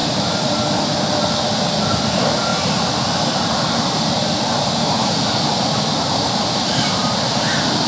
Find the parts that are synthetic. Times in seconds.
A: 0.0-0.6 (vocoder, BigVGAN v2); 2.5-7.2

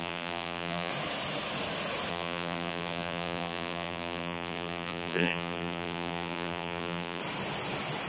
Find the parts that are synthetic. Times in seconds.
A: 0.0-0.9 (vocoder, BigVGAN v2); 2.1-7.2

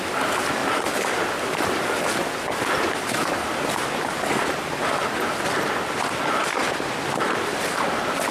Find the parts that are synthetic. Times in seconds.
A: 6.6-7.3 (vocoder, BigVGAN v2)